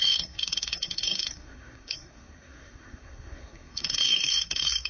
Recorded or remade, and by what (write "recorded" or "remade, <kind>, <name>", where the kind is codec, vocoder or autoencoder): remade, codec, SNAC